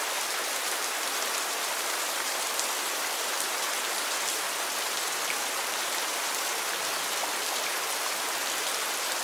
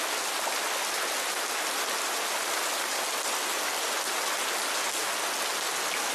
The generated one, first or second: first